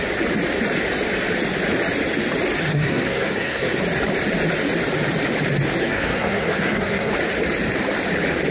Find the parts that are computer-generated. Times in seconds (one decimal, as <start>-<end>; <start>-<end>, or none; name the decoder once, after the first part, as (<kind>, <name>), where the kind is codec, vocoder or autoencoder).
2.7-3.8 (codec, SNAC); 5.8-7.1